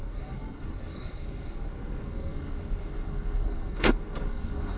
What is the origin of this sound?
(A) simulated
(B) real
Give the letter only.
A